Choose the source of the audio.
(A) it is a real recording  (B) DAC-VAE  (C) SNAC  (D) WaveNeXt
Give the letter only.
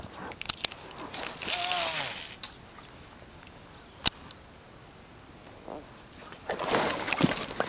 A